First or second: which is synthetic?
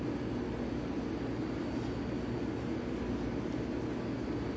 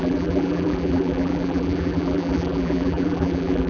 second